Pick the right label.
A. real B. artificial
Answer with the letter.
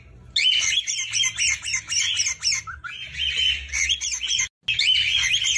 A